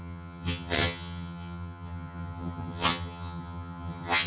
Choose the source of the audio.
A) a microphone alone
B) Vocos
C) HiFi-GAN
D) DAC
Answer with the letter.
C